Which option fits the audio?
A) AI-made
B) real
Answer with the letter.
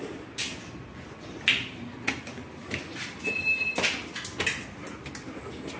B